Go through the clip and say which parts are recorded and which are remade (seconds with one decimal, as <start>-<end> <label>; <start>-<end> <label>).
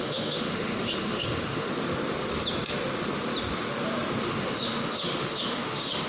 0.0-1.7 remade; 1.7-4.2 recorded; 4.2-6.1 remade